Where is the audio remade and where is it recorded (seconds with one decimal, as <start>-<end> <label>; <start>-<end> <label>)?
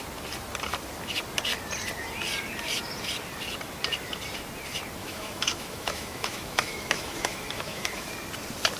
0.0-5.0 recorded; 5.0-8.1 remade; 8.1-8.8 recorded